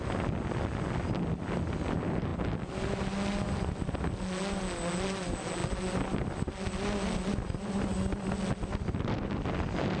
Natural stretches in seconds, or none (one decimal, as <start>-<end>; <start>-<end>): 0.0-10.0